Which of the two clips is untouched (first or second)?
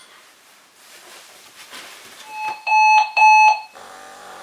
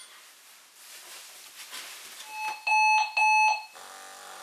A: second